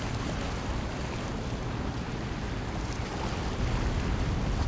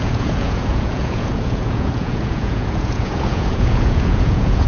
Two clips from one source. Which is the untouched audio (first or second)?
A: first